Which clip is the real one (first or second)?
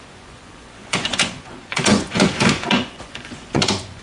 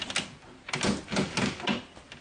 second